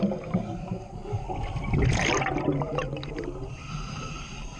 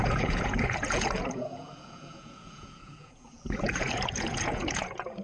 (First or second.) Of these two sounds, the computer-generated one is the second